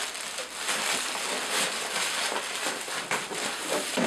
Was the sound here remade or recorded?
recorded